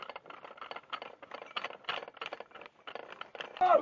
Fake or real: real